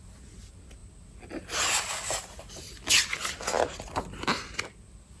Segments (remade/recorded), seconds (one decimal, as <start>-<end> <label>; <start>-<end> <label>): 0.0-5.2 recorded